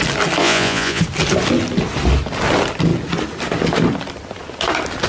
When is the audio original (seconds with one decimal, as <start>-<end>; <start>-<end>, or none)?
0.0-0.4; 1.0-5.1